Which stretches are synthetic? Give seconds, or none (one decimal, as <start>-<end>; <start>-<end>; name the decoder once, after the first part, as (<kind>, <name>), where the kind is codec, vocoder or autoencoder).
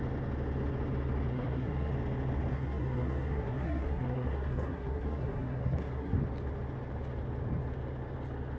1.3-1.9 (codec, SNAC); 2.5-6.2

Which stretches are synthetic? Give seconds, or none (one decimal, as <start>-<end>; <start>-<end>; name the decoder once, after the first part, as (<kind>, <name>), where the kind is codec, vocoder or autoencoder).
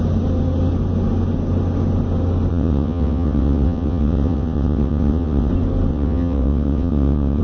2.5-5.5 (vocoder, WaveNeXt); 5.9-7.4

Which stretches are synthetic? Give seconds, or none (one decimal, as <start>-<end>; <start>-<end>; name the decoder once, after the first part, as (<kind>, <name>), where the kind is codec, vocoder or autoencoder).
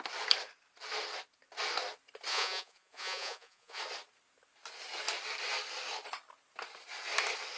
2.3-3.8 (vocoder, Vocos)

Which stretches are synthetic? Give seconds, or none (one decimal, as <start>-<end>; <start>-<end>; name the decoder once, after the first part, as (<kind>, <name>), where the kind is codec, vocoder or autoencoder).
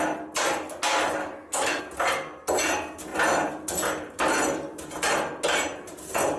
1.2-1.8 (autoencoder, DAC-VAE)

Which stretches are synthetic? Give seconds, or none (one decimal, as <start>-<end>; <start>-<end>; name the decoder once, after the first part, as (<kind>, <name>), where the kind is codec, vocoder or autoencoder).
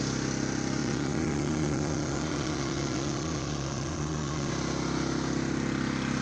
0.8-4.5 (vocoder, Vocos)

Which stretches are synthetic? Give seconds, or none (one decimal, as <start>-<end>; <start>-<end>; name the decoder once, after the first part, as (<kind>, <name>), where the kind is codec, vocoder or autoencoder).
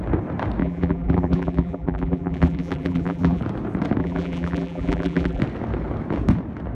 0.6-3.4 (vocoder, BigVGAN v2); 4.0-5.4